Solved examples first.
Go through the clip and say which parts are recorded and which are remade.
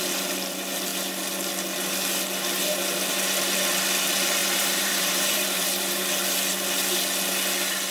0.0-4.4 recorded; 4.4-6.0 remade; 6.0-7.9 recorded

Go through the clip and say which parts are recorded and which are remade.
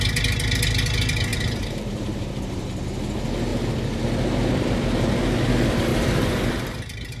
0.0-1.3 recorded; 1.3-2.3 remade; 2.3-5.9 recorded; 5.9-7.2 remade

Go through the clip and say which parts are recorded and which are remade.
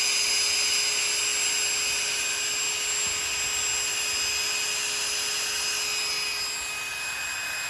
0.0-7.7 recorded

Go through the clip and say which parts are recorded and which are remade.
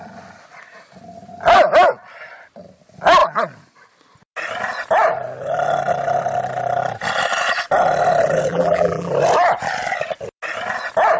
0.0-8.5 recorded; 8.5-9.1 remade; 9.1-11.2 recorded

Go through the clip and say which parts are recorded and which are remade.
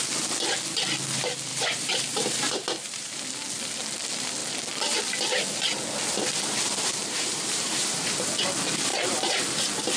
0.0-1.5 recorded; 1.5-3.2 remade; 3.2-7.0 recorded; 7.0-8.1 remade; 8.1-8.9 recorded; 8.9-9.6 remade; 9.6-10.0 recorded